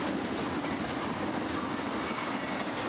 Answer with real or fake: real